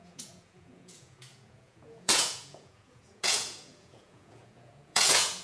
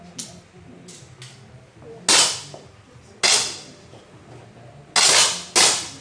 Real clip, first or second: second